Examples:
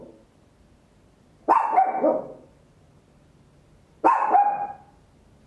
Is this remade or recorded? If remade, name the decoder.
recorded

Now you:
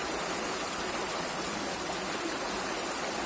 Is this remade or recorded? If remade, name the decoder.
recorded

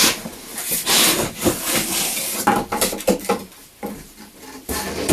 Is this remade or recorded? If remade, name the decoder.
recorded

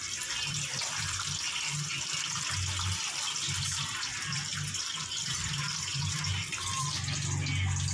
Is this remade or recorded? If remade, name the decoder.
remade, vocoder, BigVGAN v2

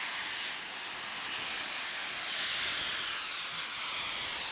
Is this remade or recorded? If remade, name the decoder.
recorded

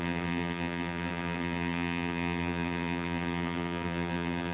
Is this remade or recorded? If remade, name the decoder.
remade, vocoder, BigVGAN v2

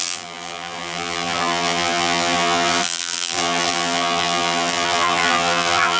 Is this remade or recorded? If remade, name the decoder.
remade, vocoder, BigVGAN v2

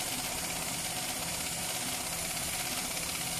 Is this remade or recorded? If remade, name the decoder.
recorded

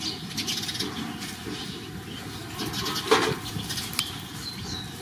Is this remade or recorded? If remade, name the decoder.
recorded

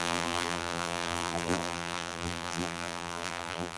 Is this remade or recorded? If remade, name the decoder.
remade, vocoder, BigVGAN v2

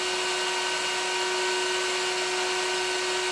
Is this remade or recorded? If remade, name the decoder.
recorded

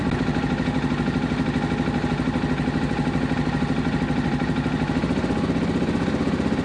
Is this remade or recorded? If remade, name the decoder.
recorded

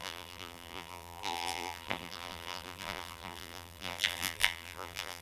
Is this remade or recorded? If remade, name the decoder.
remade, vocoder, BigVGAN v2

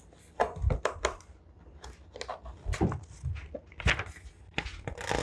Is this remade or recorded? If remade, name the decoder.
recorded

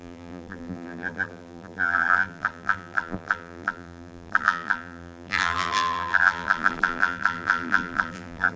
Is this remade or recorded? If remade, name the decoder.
remade, vocoder, BigVGAN v2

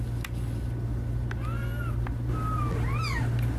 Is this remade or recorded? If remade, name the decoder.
recorded